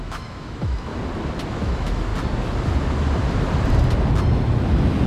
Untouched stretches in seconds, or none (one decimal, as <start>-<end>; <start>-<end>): 0.9-1.5; 2.1-5.1